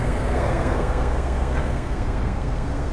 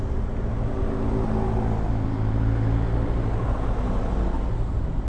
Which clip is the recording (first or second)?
second